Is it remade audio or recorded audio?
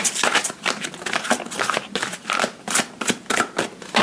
recorded